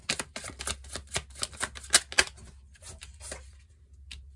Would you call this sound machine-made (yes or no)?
no